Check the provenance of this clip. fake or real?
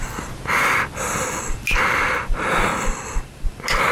real